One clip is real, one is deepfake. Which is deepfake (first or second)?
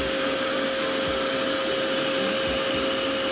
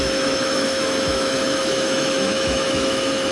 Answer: second